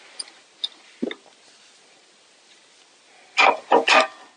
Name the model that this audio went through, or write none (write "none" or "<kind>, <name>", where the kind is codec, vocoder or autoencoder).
none